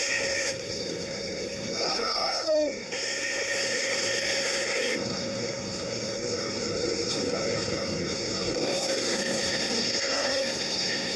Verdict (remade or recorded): remade